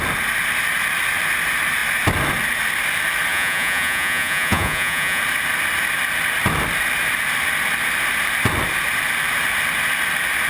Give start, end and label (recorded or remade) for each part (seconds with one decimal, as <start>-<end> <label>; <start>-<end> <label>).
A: 0.0-3.3 recorded; 3.3-5.2 remade; 5.2-10.5 recorded